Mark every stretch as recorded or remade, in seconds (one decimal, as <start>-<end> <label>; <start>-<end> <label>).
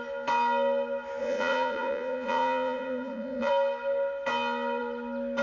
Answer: 0.0-1.2 recorded; 1.2-3.5 remade; 3.5-5.4 recorded